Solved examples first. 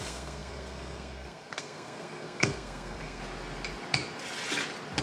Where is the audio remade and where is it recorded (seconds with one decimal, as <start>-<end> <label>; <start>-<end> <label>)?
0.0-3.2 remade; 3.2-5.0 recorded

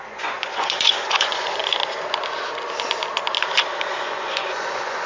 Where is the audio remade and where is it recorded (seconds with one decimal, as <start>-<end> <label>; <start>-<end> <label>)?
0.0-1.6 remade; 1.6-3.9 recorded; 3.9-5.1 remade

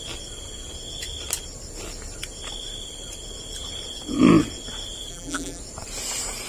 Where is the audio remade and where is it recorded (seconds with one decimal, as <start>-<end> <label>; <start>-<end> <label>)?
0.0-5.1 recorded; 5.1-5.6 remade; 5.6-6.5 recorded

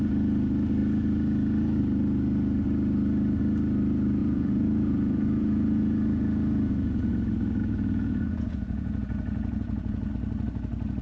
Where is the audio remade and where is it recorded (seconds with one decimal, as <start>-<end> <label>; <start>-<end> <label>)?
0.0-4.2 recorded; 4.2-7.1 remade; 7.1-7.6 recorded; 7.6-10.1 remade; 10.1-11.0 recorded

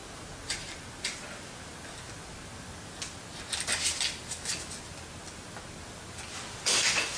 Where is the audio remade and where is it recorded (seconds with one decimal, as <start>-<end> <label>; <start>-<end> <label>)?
0.0-7.2 recorded